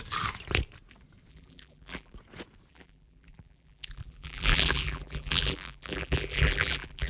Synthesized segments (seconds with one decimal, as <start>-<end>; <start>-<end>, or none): 1.3-2.1; 2.7-7.1